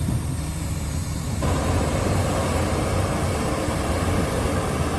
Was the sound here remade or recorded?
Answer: remade